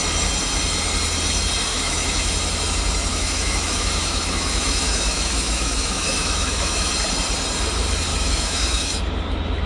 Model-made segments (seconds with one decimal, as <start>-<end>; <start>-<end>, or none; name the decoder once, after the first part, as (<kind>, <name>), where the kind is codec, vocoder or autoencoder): 1.7-2.3 (autoencoder, DAC-VAE); 3.1-6.9; 8.1-9.0

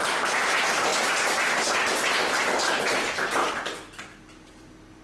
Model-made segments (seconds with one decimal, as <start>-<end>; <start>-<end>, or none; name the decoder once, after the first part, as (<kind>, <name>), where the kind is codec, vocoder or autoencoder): 0.0-0.9 (vocoder, BigVGAN v2); 2.2-3.4; 4.5-5.0

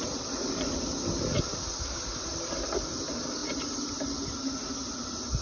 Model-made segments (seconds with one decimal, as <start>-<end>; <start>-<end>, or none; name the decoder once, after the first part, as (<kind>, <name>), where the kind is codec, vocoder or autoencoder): none

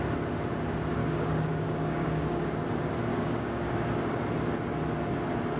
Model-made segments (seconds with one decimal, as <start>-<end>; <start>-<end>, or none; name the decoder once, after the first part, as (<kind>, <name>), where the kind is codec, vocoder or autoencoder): 1.0-2.6 (codec, DAC); 3.1-3.7

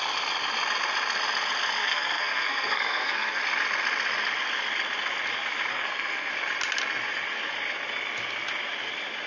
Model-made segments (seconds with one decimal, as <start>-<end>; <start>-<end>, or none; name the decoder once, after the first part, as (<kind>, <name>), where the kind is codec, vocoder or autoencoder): 1.8-3.4 (codec, SNAC); 5.7-6.3

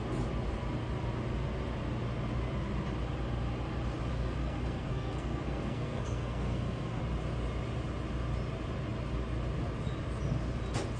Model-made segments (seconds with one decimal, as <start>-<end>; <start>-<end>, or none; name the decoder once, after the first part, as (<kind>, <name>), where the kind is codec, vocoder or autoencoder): 4.1-7.0 (codec, SNAC)

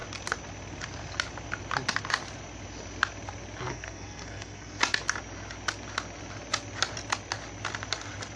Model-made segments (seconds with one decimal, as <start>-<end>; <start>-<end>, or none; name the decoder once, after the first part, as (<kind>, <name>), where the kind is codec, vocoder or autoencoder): 3.7-4.8 (codec, SNAC)